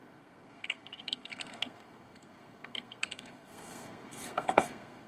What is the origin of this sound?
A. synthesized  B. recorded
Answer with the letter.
A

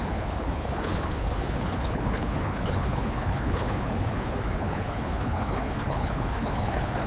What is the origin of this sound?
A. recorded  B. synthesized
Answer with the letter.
B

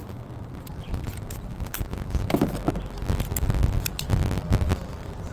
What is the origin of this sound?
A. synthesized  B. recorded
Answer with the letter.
B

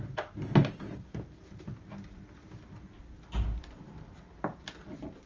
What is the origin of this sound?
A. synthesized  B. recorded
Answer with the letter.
B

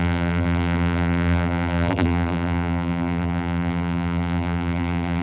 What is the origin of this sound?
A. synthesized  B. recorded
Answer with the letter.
A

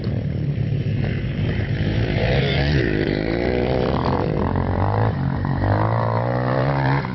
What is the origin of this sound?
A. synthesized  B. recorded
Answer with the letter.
A